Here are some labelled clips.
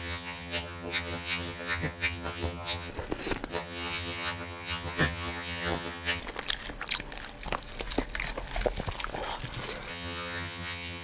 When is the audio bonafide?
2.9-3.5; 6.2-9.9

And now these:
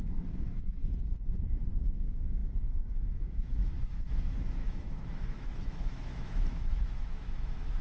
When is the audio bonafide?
0.8-1.8

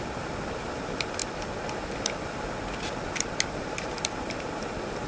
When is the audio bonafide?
0.0-5.1

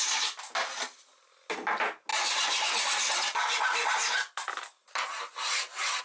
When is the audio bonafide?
0.0-6.0

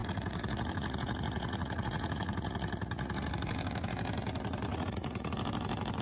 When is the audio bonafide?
3.3-4.7; 5.3-6.0